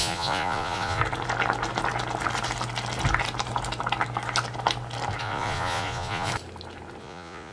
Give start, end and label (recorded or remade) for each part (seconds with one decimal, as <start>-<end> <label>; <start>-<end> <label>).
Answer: 0.0-1.0 remade; 1.0-5.2 recorded; 5.2-6.3 remade; 6.3-7.0 recorded; 7.0-7.5 remade